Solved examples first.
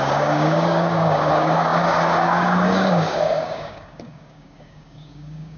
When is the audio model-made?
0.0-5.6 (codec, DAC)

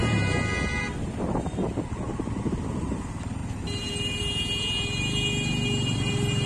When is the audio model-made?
none